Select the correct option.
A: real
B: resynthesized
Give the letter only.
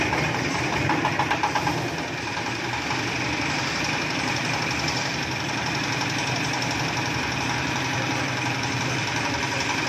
B